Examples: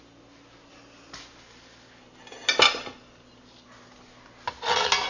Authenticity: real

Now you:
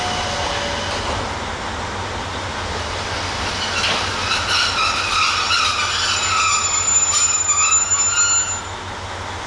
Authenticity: real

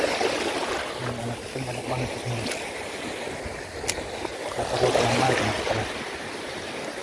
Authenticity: real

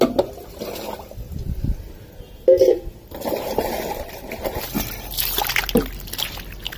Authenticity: real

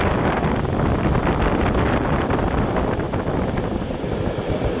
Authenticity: real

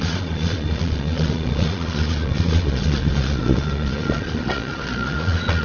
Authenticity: fake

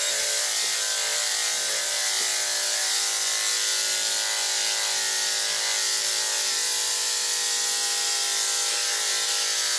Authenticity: real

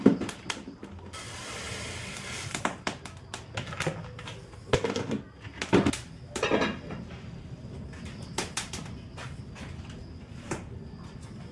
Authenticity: real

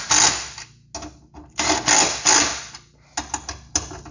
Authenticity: real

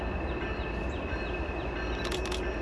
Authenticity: real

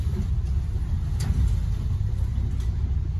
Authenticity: real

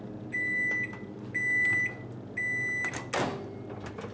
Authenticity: real